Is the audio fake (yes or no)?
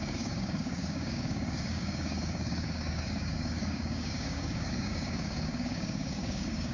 yes